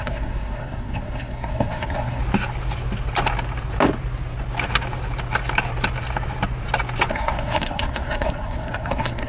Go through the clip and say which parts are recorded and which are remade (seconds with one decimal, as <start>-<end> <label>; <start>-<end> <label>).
0.0-2.2 remade; 2.2-7.1 recorded; 7.1-9.3 remade